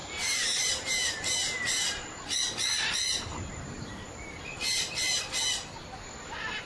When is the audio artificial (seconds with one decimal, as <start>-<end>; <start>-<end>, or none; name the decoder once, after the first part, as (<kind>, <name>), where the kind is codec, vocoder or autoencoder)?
0.0-2.3 (vocoder, BigVGAN v2); 3.3-4.4